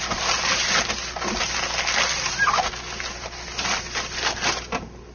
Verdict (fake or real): real